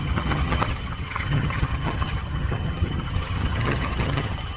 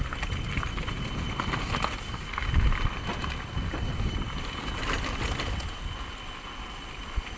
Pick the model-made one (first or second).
first